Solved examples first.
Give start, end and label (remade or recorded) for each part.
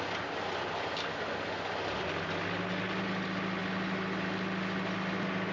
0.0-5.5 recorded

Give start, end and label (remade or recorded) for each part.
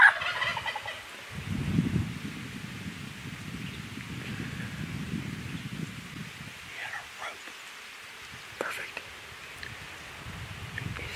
0.0-11.2 recorded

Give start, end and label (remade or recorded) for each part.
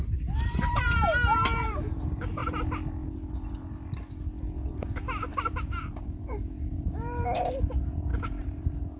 0.0-2.4 remade; 2.4-4.7 recorded; 4.7-9.0 remade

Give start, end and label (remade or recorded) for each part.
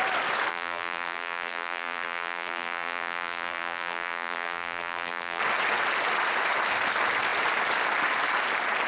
0.0-0.5 recorded; 0.5-5.4 remade; 5.4-8.9 recorded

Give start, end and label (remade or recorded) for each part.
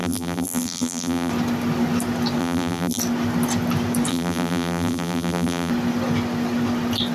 0.0-1.3 remade; 1.3-2.4 recorded; 2.4-3.0 remade; 3.0-4.1 recorded; 4.1-5.7 remade; 5.7-7.1 recorded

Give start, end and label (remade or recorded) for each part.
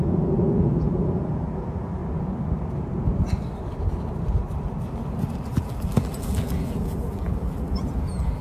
0.0-2.0 remade; 2.0-5.5 recorded; 5.5-8.4 remade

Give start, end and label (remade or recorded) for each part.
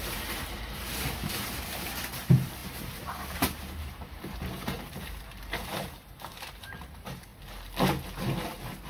0.0-7.3 remade; 7.3-8.2 recorded; 8.2-8.9 remade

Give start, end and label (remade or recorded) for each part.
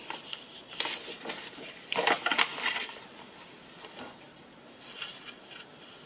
0.0-0.9 remade; 0.9-6.1 recorded